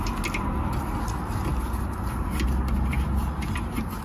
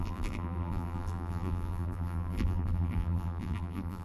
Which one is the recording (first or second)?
first